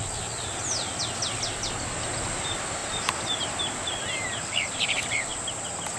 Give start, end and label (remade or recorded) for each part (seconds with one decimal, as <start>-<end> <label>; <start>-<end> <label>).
0.0-1.0 remade; 1.0-2.3 recorded; 2.3-2.8 remade; 2.8-3.9 recorded; 3.9-5.3 remade; 5.3-6.0 recorded